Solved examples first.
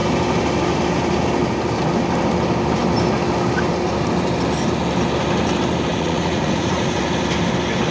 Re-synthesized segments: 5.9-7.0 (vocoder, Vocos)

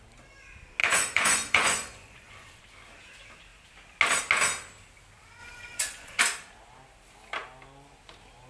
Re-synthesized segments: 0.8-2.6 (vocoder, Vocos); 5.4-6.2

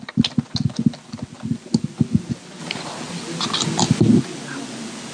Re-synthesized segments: none